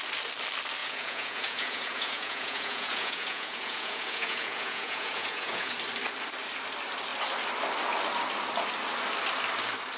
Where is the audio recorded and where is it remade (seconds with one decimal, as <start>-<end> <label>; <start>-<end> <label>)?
0.0-0.8 recorded; 0.8-5.7 remade; 5.7-10.0 recorded